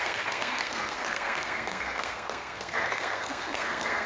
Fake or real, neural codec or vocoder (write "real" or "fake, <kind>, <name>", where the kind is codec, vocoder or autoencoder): fake, codec, SNAC